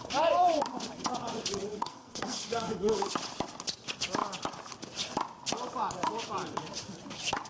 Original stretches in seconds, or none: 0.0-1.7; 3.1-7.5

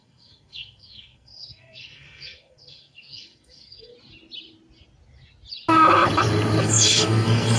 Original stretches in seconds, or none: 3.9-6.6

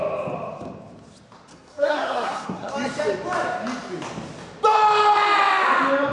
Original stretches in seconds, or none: 0.0-1.5; 2.7-6.1

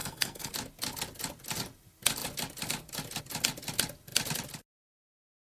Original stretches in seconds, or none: 0.5-5.5